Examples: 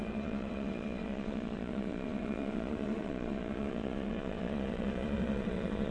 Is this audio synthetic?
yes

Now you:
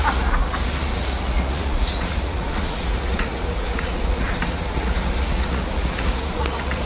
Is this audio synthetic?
yes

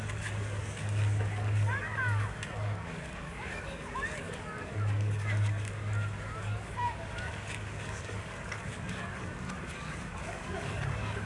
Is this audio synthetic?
yes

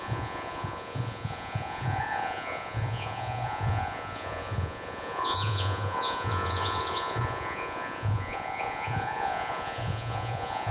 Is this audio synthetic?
yes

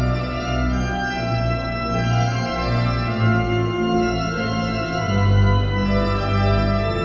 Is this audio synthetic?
no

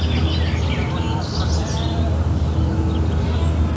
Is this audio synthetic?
no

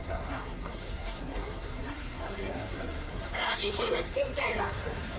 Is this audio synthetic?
yes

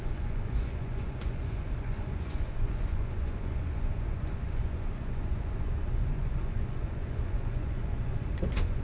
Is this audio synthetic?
yes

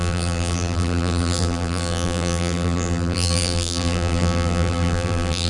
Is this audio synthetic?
yes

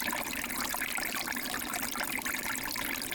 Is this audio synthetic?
no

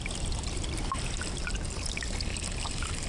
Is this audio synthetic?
no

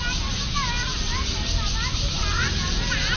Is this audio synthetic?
no